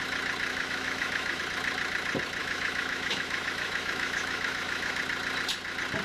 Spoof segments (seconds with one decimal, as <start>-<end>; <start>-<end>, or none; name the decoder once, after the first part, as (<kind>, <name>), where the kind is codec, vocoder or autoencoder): 0.5-1.4 (autoencoder, DAC-VAE); 2.4-5.0